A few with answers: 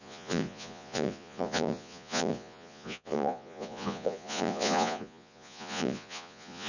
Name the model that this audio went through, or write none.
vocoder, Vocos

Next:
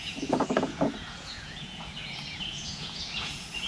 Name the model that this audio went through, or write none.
vocoder, Vocos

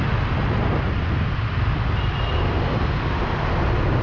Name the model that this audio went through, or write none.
none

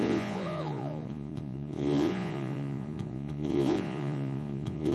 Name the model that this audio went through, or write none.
vocoder, Vocos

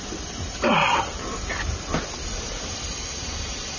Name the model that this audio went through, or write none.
none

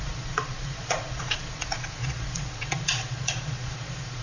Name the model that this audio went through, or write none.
vocoder, Vocos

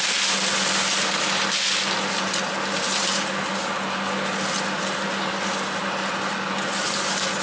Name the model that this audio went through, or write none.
none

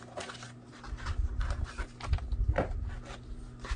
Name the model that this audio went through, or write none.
none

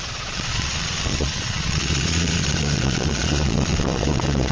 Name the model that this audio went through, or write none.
vocoder, Vocos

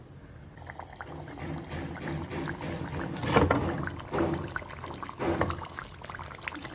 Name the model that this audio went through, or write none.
none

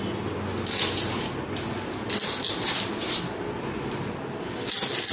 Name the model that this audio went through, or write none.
none